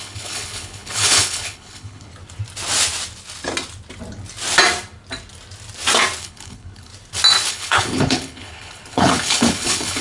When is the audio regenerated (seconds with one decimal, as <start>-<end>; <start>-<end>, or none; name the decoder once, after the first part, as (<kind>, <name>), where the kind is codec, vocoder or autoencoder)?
0.0-2.1 (codec, HILCodec); 6.2-6.9; 7.5-10.0